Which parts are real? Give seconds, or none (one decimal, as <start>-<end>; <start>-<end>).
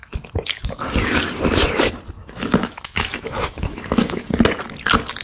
0.8-2.2; 4.3-5.2